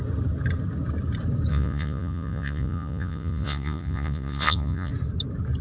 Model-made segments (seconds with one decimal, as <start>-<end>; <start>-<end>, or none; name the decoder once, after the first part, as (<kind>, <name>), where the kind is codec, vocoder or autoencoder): 1.5-4.9 (vocoder, Vocos)